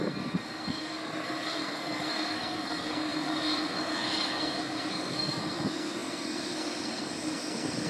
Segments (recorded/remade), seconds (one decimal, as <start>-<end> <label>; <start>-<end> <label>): 0.0-7.9 remade